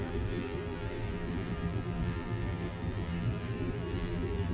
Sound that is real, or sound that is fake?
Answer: fake